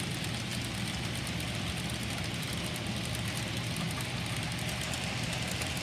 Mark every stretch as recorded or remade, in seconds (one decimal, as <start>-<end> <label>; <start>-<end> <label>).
0.0-5.8 recorded

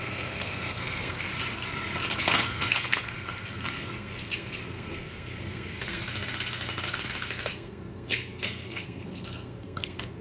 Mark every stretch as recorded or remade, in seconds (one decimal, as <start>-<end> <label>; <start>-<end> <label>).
0.0-1.3 remade; 1.3-2.2 recorded; 2.2-10.2 remade

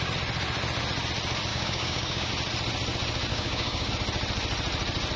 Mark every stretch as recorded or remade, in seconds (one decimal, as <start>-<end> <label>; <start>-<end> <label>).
0.0-1.5 recorded; 1.5-2.3 remade; 2.3-3.3 recorded; 3.3-3.9 remade; 3.9-5.2 recorded

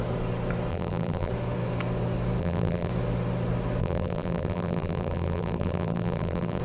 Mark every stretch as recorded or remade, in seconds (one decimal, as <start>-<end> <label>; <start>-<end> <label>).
0.0-0.7 recorded; 0.7-1.3 remade; 1.3-2.4 recorded; 2.4-2.9 remade; 2.9-3.8 recorded; 3.8-6.6 remade